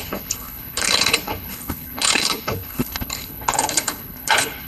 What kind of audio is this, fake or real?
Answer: fake